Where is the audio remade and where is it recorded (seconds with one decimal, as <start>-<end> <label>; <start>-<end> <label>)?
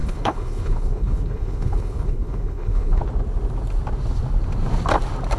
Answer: 0.0-3.0 remade; 3.0-5.4 recorded